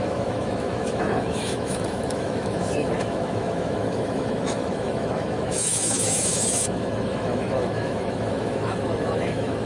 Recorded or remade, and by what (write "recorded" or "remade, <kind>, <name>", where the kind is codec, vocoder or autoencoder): remade, autoencoder, DAC-VAE